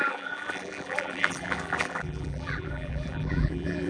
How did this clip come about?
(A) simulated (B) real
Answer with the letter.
A